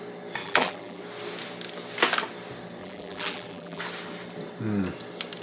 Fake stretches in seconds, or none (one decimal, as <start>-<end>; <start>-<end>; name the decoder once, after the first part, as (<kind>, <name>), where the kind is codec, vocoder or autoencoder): 0.4-1.0 (vocoder, BigVGAN v2); 2.8-3.8